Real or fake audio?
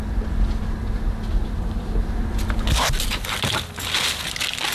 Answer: real